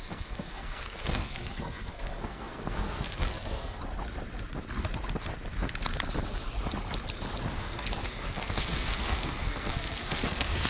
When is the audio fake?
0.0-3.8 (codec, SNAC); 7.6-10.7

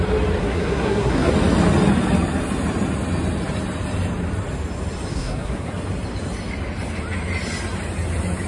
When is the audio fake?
0.4-1.3 (codec, SNAC); 5.1-5.7

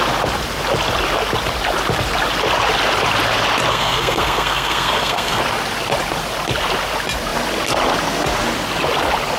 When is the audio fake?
3.7-5.4 (codec, SNAC)

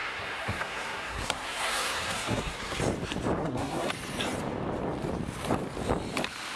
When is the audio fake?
0.0-2.8 (codec, SNAC); 3.4-3.9

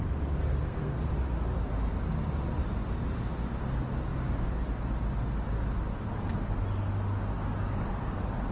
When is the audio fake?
0.4-1.0 (codec, SNAC)